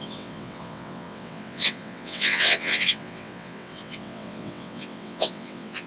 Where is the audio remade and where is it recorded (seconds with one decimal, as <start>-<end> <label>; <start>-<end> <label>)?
0.0-5.9 remade